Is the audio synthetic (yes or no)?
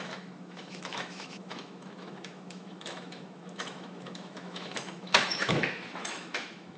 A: yes